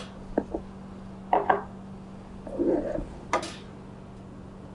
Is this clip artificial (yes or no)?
no